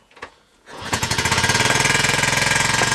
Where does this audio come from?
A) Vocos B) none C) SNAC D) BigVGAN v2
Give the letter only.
A